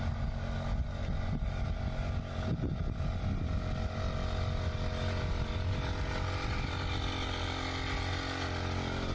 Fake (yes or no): no